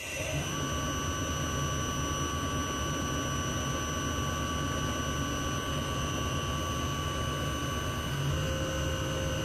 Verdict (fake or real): real